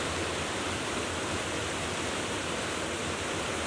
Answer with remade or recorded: recorded